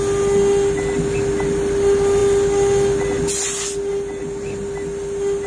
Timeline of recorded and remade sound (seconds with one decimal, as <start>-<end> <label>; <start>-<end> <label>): 0.0-5.5 recorded